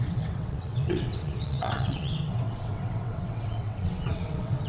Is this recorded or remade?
remade